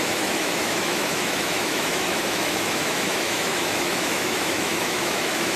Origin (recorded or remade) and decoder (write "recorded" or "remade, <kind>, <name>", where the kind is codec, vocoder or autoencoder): remade, autoencoder, DAC-VAE